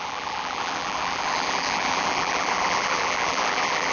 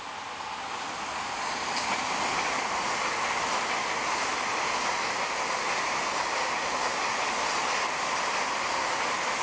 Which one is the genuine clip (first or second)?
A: second